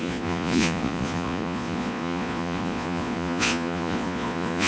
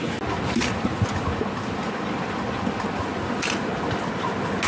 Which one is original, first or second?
second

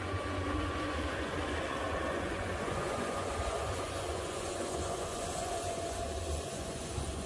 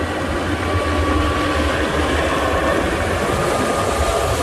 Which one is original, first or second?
second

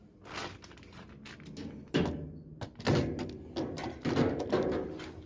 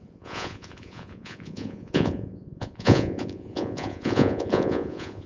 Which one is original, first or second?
first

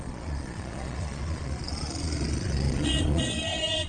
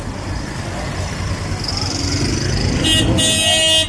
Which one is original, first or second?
second